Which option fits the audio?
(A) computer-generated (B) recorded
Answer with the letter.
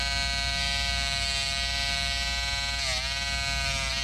B